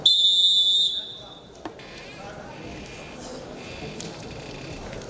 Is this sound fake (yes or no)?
no